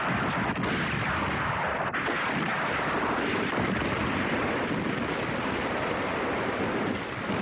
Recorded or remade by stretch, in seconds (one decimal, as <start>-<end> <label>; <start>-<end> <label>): 0.0-7.4 recorded